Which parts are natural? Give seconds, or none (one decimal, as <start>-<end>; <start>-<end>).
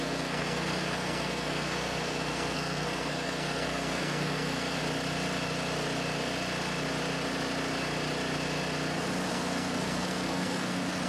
4.8-9.3